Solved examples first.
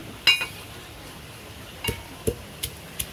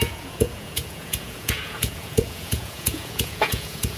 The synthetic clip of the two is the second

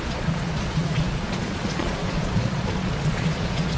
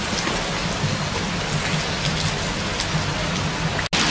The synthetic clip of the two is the first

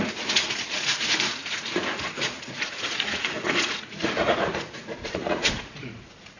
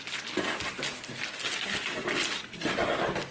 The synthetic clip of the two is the first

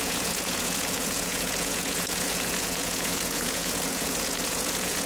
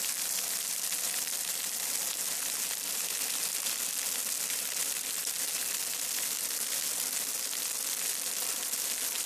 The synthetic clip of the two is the first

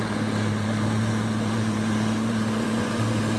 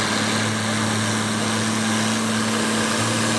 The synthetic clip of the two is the first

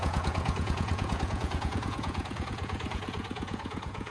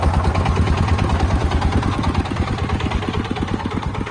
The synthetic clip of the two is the first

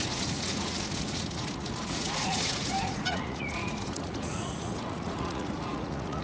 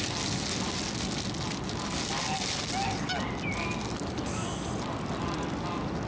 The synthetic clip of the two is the first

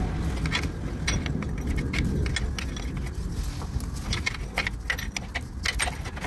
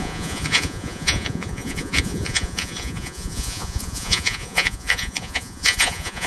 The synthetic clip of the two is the second